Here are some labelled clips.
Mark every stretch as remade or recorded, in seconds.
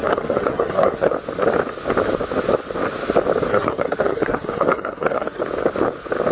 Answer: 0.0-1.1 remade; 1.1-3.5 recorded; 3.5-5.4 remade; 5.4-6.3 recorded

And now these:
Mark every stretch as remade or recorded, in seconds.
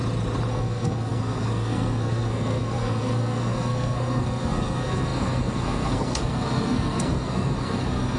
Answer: 0.0-0.5 recorded; 0.5-8.2 remade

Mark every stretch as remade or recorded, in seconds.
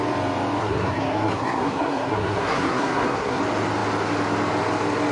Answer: 0.0-0.6 recorded; 0.6-3.4 remade; 3.4-5.1 recorded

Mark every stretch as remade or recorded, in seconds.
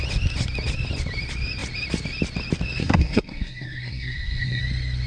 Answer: 0.0-2.8 recorded; 2.8-4.6 remade; 4.6-5.1 recorded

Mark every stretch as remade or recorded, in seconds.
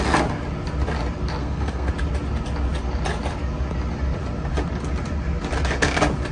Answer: 0.0-1.4 recorded; 1.4-1.9 remade; 1.9-6.3 recorded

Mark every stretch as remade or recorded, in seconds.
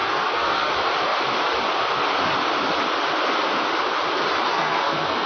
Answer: 0.0-0.7 remade; 0.7-4.5 recorded; 4.5-5.3 remade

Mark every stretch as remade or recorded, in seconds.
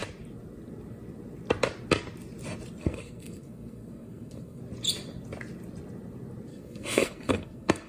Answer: 0.0-2.8 recorded; 2.8-4.6 remade; 4.6-6.5 recorded; 6.5-7.9 remade